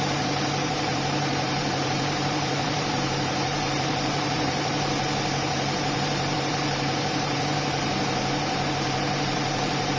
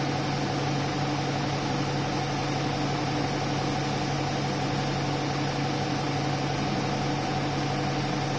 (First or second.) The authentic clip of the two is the second